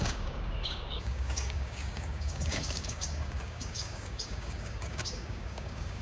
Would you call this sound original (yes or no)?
no